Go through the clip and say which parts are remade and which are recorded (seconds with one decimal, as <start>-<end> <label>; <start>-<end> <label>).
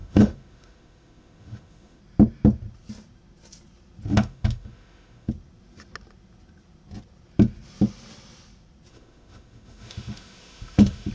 0.0-2.0 remade; 2.0-4.1 recorded; 4.1-5.3 remade; 5.3-8.9 recorded; 8.9-11.1 remade